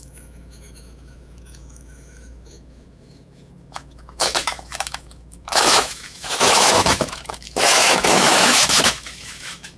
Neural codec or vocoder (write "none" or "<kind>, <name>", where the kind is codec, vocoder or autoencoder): autoencoder, DAC-VAE